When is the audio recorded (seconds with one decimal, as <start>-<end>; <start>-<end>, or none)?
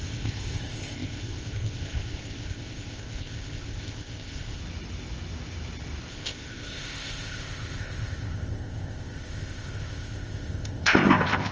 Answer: 4.6-6.1